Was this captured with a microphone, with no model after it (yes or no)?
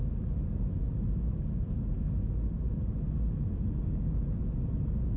yes